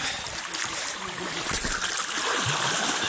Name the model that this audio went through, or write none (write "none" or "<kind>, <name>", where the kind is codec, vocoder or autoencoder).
none